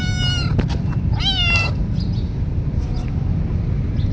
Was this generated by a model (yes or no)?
no